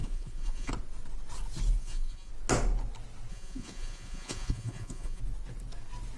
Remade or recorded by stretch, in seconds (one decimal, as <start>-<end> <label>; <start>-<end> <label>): 0.0-0.7 remade; 0.7-1.8 recorded; 1.8-2.3 remade; 2.3-3.3 recorded; 3.3-5.2 remade; 5.2-6.2 recorded

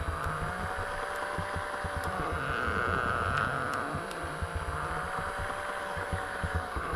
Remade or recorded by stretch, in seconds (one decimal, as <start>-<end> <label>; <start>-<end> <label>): 0.0-5.8 recorded; 5.8-7.0 remade

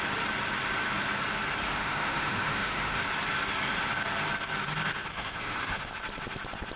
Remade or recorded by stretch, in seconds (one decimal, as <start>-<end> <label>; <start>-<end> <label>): 0.0-1.7 recorded; 1.7-3.0 remade; 3.0-5.1 recorded; 5.1-5.9 remade; 5.9-6.8 recorded